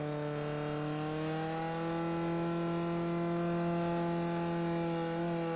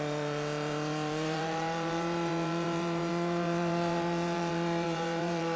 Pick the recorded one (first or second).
first